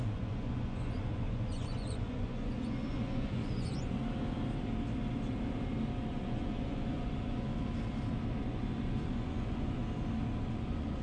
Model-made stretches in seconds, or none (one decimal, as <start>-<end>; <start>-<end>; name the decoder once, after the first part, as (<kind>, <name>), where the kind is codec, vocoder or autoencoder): 0.0-4.0 (vocoder, Vocos); 6.1-7.5; 8.4-9.8; 10.4-11.0